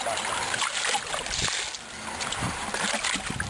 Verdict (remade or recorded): recorded